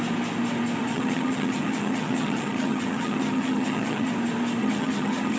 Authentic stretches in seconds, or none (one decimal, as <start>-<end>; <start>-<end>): 0.0-0.9; 4.1-4.6